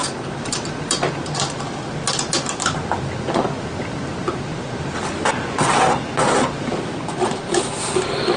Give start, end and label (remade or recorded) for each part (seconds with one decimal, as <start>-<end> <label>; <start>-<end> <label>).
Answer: 0.0-8.4 recorded